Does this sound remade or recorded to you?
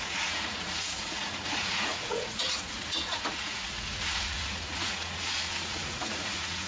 remade